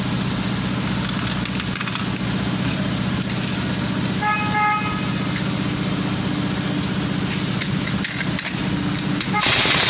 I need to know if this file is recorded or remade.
recorded